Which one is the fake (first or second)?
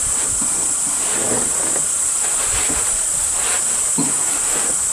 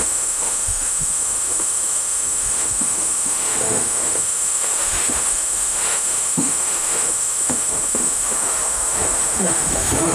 second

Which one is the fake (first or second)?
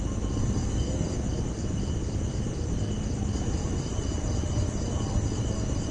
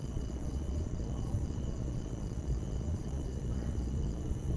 second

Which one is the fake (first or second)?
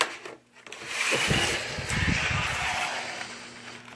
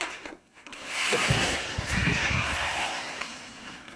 second